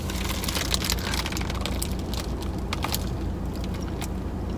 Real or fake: real